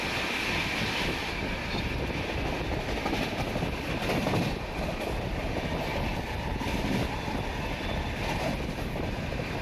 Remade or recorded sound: recorded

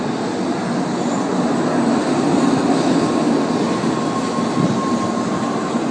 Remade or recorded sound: recorded